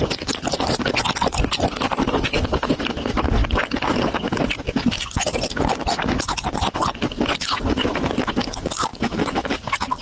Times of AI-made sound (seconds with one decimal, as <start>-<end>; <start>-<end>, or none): 8.9-9.5